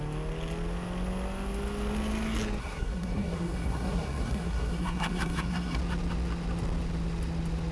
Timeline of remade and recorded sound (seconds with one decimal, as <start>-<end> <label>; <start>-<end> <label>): 0.0-2.6 recorded; 2.6-5.8 remade; 5.8-7.7 recorded